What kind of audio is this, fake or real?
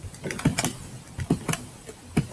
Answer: real